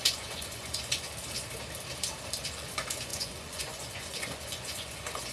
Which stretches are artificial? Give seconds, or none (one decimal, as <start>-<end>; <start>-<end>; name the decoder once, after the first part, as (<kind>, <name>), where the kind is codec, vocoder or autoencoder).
0.0-1.1 (vocoder, Vocos); 2.4-5.3